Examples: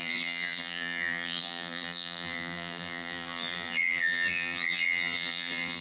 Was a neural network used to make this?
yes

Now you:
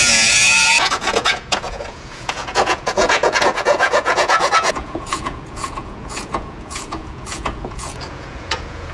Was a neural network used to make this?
yes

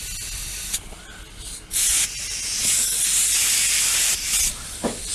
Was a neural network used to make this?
no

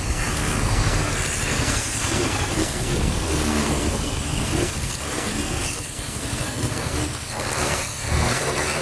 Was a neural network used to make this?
yes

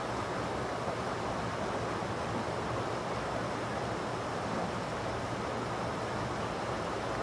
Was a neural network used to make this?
no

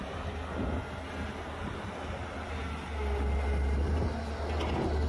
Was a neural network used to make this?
no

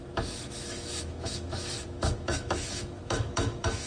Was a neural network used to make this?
yes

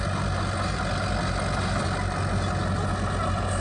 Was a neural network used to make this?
no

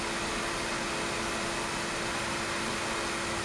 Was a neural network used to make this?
no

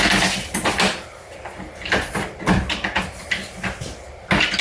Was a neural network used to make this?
no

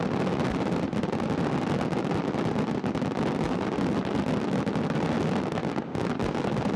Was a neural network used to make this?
no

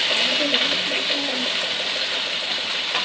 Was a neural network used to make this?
no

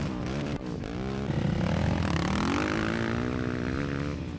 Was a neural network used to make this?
no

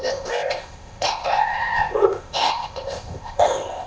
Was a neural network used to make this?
yes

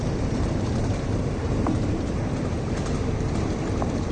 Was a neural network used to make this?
yes